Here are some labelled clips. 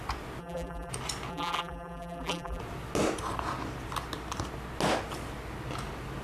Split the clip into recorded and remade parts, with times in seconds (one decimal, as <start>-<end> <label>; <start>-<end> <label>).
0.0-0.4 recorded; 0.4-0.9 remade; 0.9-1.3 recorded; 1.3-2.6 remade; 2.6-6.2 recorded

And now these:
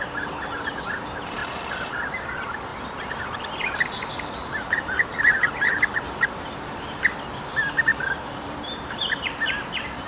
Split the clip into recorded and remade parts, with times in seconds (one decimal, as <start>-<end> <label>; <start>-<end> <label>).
0.0-1.4 recorded; 1.4-1.9 remade; 1.9-4.4 recorded; 4.4-7.2 remade; 7.2-7.9 recorded; 7.9-9.3 remade; 9.3-10.1 recorded

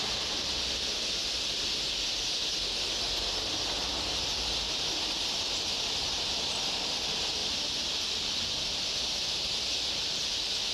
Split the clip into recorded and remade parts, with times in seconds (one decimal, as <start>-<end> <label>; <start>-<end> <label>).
0.0-1.2 recorded; 1.2-1.9 remade; 1.9-7.4 recorded; 7.4-10.7 remade

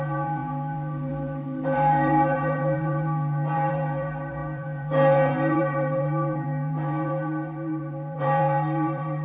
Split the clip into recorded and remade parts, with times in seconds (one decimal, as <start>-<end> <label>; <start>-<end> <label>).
0.0-9.2 remade

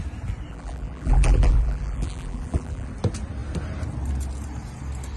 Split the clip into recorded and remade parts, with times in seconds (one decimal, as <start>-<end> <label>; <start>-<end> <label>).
0.0-0.5 recorded; 0.5-2.9 remade; 2.9-5.2 recorded

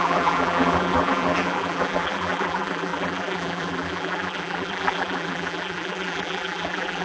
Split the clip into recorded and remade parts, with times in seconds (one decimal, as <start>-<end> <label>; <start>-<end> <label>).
0.0-7.0 remade

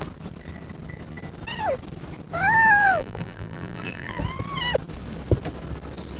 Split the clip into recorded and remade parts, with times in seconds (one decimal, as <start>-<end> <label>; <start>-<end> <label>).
0.0-2.8 recorded; 2.8-4.2 remade; 4.2-6.2 recorded

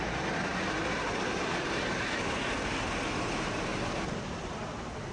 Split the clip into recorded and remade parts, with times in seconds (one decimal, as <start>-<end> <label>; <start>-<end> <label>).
0.0-0.5 recorded; 0.5-1.1 remade; 1.1-3.7 recorded; 3.7-4.5 remade; 4.5-5.1 recorded